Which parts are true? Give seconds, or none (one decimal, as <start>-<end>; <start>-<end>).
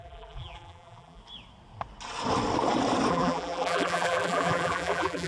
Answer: 1.2-3.1